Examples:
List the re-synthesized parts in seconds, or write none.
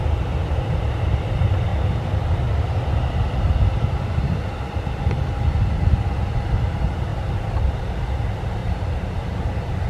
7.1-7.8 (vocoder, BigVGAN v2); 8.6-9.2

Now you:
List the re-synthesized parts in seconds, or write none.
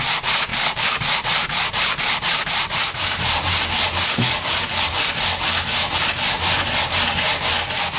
0.5-5.1 (vocoder, BigVGAN v2)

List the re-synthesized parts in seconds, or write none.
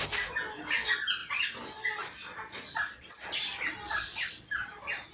none